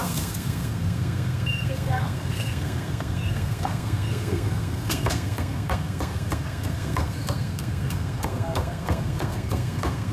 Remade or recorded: remade